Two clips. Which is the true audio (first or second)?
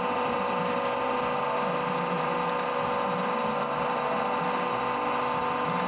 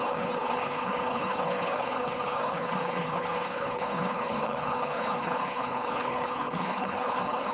first